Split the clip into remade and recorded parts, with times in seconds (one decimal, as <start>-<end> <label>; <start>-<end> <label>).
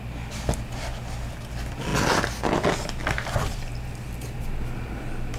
0.0-5.4 recorded